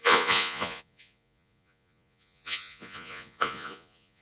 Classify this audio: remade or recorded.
remade